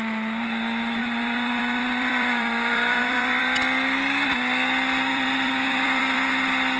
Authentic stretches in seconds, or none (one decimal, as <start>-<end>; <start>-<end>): 0.0-1.0; 3.4-5.1; 6.3-6.8